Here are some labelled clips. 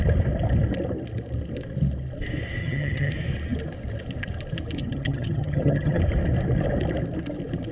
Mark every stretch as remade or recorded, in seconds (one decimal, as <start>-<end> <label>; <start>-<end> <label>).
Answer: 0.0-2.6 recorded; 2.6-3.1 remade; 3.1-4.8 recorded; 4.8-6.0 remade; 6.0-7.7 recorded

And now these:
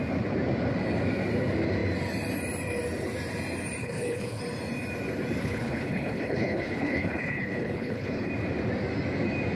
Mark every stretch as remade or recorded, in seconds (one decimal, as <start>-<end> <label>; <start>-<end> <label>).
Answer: 0.0-3.8 recorded; 3.8-4.4 remade; 4.4-5.4 recorded; 5.4-8.3 remade; 8.3-9.5 recorded

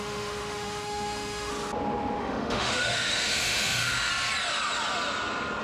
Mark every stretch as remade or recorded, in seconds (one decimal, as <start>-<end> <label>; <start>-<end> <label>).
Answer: 0.0-1.5 remade; 1.5-2.2 recorded; 2.2-4.1 remade; 4.1-5.6 recorded

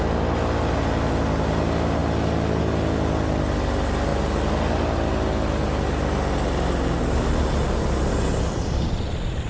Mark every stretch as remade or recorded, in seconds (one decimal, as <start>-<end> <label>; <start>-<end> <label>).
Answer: 0.0-9.5 recorded

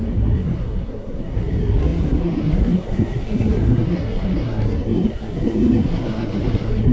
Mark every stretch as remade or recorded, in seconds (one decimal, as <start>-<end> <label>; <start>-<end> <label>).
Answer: 0.0-6.9 remade